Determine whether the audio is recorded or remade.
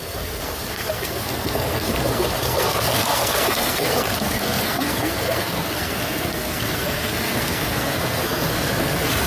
remade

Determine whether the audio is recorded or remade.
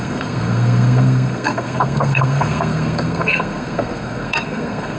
remade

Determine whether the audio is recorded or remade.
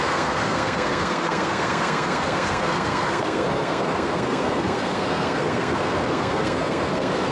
remade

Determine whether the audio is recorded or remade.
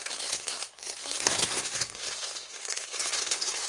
remade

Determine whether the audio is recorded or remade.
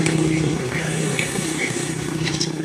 remade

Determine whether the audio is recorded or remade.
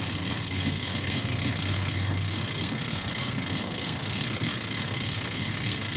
remade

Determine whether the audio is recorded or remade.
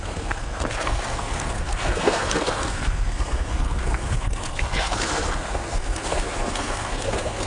remade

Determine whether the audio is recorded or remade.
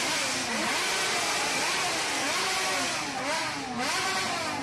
recorded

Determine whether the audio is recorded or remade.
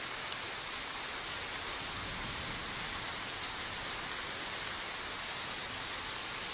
recorded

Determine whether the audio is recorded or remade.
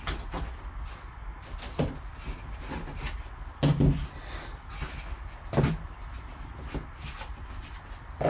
recorded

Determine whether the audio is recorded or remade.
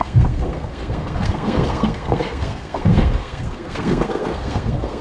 remade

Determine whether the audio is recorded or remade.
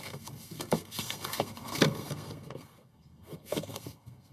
remade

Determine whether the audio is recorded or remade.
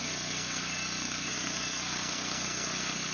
remade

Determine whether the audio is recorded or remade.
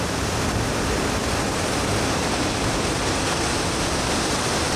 recorded